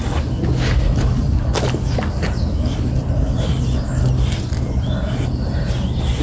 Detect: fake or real real